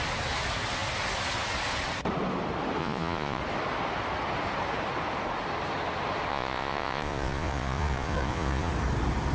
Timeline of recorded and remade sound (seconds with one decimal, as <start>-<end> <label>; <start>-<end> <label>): 0.0-2.8 recorded; 2.8-3.4 remade; 3.4-6.3 recorded; 6.3-8.7 remade; 8.7-9.3 recorded

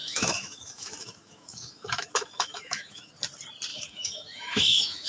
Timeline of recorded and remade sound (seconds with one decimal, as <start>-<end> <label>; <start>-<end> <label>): 0.0-3.1 remade; 3.1-3.7 recorded; 3.7-5.1 remade